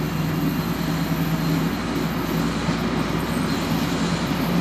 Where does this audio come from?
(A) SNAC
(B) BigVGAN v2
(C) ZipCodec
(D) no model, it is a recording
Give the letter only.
D